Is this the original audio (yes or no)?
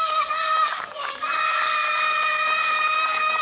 no